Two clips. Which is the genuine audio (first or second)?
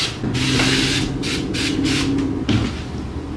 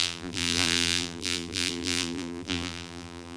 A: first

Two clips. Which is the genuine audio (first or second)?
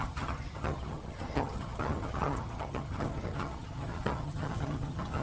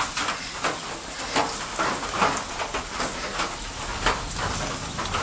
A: second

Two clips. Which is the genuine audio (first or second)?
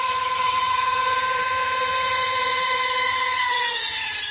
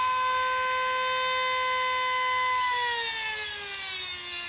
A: second